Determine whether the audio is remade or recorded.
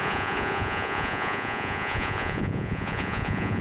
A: remade